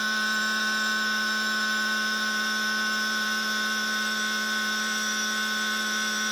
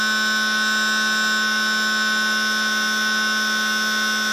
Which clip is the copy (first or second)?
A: first